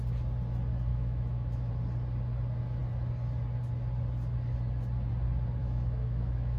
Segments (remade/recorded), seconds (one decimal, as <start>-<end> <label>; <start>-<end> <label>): 0.0-0.9 recorded; 0.9-1.7 remade; 1.7-5.6 recorded; 5.6-6.6 remade